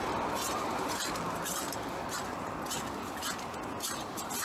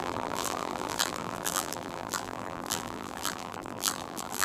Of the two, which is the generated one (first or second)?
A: second